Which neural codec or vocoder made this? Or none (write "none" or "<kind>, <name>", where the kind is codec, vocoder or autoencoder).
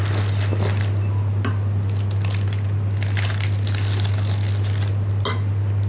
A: none